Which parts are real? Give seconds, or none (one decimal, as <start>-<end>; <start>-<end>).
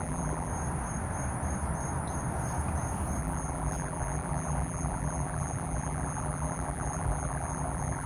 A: 0.5-3.2